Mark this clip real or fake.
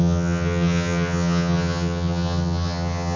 fake